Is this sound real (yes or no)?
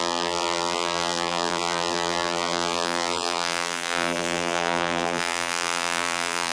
no